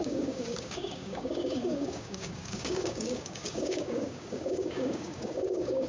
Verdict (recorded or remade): remade